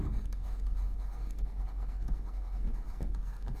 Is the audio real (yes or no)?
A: no